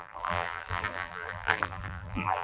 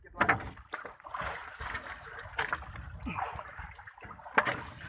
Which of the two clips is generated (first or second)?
first